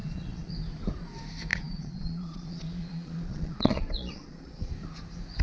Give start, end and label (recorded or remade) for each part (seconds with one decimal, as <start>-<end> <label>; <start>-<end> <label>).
0.0-0.5 remade; 0.5-1.5 recorded; 1.5-4.7 remade; 4.7-5.4 recorded

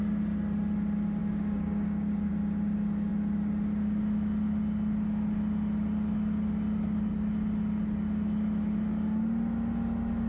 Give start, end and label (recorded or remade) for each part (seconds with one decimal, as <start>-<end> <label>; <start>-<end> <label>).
0.0-1.2 recorded; 1.2-2.3 remade; 2.3-10.3 recorded